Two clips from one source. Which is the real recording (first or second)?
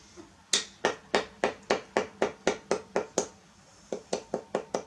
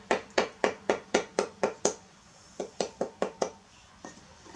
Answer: first